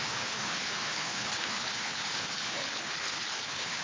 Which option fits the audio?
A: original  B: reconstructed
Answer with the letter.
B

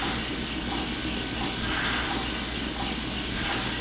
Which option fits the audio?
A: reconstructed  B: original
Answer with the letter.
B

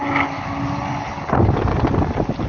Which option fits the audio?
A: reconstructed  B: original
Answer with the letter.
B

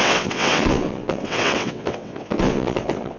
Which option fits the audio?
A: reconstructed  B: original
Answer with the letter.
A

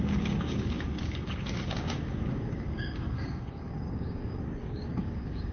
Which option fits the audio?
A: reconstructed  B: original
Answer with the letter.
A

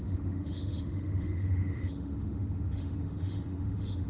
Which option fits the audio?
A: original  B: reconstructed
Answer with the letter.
B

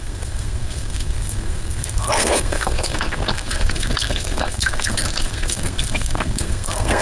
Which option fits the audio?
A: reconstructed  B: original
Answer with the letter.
A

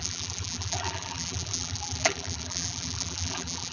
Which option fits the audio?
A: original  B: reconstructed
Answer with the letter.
B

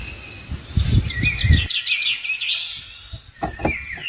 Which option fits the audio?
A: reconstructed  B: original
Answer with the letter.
B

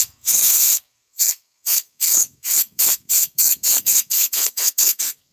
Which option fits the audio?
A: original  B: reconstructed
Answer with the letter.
B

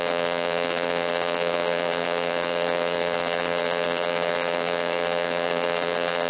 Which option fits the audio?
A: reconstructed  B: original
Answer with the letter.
A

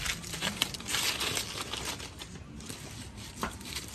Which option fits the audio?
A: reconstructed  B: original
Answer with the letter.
B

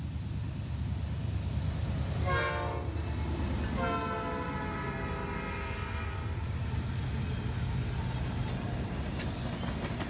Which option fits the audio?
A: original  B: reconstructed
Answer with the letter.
A